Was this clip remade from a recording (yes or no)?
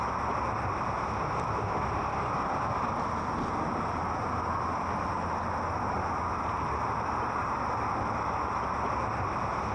no